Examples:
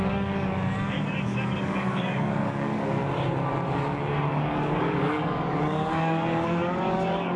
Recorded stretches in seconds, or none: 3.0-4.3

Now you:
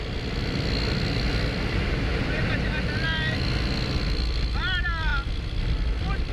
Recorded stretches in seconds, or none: 0.0-6.3

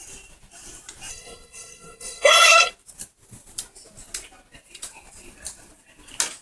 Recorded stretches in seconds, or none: 0.0-1.1; 2.7-6.4

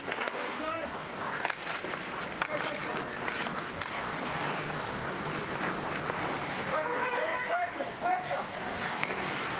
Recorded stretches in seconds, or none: 1.6-3.6; 5.3-6.5